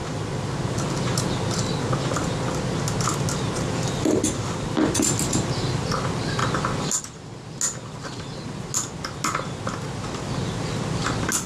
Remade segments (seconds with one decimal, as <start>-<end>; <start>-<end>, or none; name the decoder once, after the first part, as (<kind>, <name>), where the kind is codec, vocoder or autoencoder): none